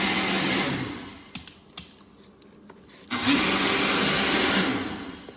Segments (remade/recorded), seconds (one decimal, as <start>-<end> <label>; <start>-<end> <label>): 0.0-5.4 recorded